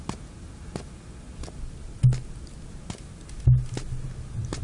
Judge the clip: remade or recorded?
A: recorded